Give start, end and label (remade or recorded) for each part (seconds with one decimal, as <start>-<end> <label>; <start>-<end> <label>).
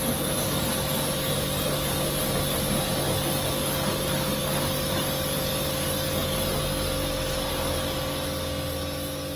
0.0-9.4 recorded